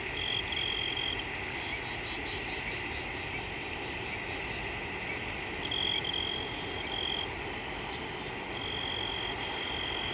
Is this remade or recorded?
recorded